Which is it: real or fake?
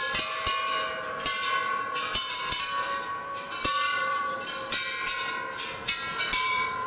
fake